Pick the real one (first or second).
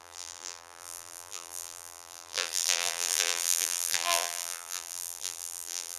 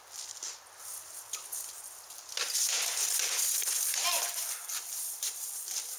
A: second